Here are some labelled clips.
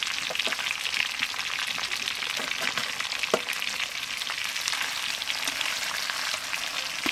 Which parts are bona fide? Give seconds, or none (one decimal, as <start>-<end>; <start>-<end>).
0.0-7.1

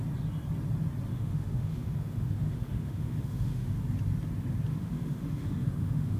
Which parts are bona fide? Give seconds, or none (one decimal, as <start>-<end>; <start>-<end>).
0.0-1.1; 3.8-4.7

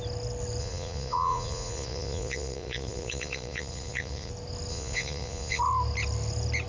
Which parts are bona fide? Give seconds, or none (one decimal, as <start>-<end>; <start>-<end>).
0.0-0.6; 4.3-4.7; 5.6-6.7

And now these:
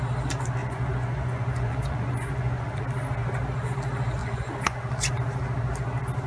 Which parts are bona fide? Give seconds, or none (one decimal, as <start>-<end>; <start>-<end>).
0.0-0.6; 2.8-4.2; 5.1-6.3

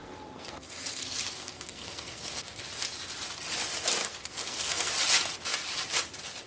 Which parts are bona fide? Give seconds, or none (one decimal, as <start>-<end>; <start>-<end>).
2.6-4.0; 4.9-6.5

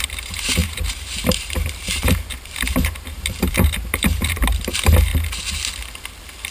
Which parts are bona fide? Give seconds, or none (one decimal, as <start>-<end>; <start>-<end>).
5.1-6.5